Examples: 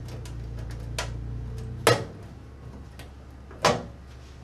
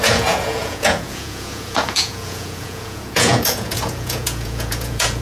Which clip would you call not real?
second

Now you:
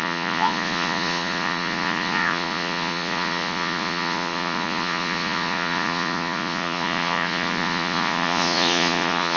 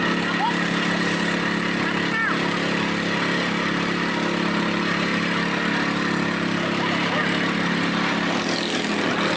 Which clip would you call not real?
first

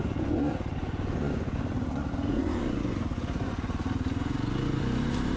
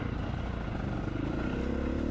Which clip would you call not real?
first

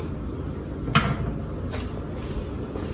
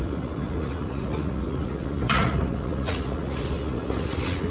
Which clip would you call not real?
second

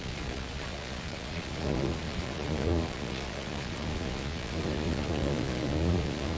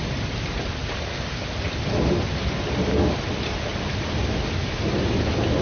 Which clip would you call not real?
first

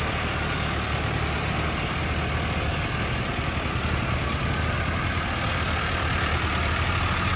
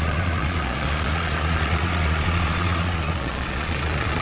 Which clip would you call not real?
second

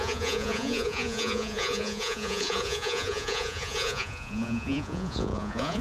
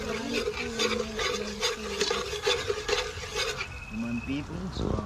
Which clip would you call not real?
first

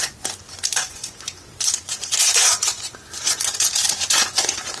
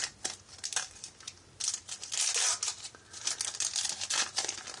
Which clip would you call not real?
first